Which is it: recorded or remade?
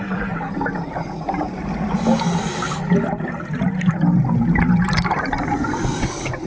recorded